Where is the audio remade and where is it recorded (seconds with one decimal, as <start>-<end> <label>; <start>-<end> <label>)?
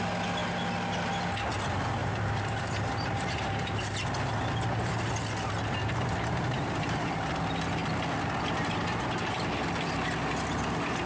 0.0-2.0 recorded; 2.0-3.8 remade; 3.8-5.8 recorded; 5.8-7.3 remade; 7.3-11.1 recorded